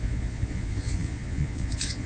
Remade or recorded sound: remade